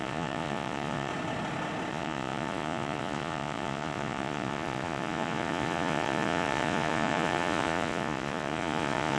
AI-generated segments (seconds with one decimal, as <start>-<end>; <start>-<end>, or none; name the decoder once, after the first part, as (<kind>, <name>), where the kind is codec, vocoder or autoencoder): 0.0-1.1 (vocoder, Vocos); 1.9-9.2